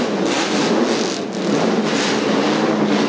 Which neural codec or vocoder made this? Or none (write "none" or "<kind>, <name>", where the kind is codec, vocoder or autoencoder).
none